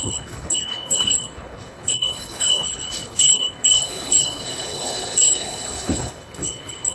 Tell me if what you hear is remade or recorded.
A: remade